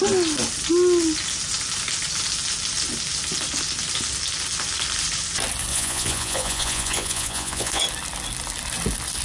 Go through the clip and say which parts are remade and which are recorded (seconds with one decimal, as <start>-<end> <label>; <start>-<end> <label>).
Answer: 0.0-5.7 recorded; 5.7-7.8 remade; 7.8-9.2 recorded